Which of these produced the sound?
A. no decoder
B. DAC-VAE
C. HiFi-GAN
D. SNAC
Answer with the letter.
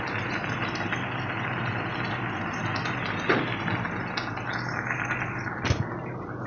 A